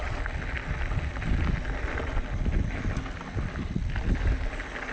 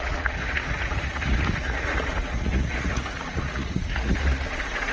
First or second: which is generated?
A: second